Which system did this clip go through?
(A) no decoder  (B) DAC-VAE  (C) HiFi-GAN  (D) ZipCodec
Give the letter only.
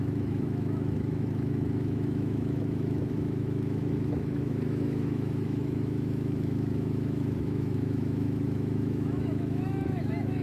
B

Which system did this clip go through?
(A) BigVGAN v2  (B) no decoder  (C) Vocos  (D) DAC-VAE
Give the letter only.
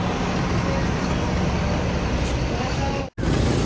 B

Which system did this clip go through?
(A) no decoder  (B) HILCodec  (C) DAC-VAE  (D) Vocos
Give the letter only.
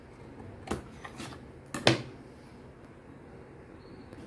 A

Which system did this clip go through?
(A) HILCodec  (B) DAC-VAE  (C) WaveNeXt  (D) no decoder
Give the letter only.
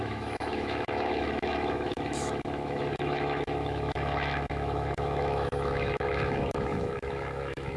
B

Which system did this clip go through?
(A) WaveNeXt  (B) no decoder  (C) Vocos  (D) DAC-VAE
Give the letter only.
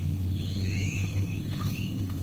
D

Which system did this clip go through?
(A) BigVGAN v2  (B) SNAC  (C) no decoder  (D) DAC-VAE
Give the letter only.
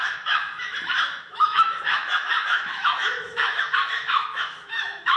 D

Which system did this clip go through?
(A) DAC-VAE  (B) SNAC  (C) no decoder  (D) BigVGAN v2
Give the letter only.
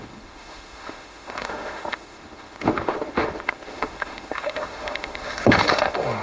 A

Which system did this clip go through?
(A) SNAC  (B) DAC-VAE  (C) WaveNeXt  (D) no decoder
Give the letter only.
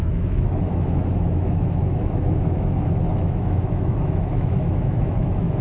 B